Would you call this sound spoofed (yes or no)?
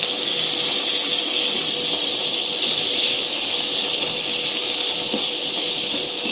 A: no